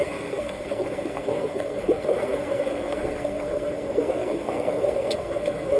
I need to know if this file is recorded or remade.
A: remade